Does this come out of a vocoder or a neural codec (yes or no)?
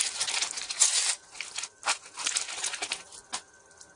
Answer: no